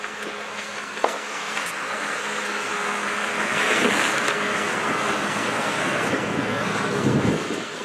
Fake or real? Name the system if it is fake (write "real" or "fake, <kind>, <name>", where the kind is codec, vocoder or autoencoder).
fake, codec, SNAC